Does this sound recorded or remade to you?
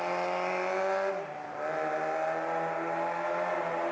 recorded